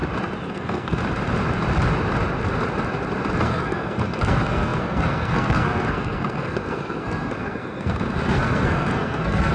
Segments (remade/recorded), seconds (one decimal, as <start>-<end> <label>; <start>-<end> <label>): 0.0-0.5 recorded; 0.5-1.0 remade; 1.0-3.4 recorded; 3.4-9.5 remade